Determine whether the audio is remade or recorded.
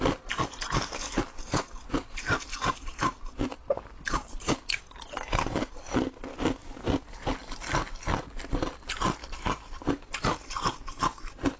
recorded